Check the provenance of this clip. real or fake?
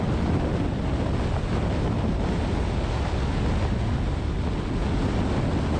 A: real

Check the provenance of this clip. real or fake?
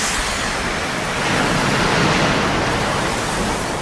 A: real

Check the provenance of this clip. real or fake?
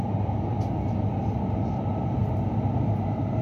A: real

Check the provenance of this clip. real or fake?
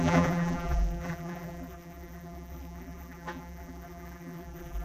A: fake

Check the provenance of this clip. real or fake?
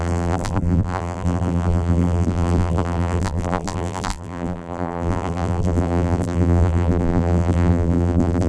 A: fake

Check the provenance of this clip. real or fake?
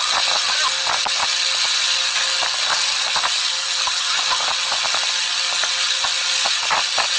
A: real